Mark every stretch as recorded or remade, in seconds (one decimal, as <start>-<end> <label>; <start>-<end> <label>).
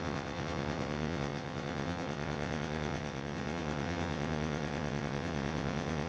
0.0-6.1 remade